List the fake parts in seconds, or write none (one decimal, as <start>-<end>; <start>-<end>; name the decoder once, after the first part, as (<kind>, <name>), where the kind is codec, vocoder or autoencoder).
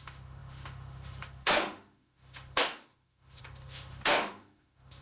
0.0-5.0 (autoencoder, DAC-VAE)